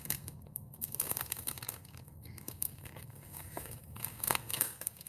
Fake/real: fake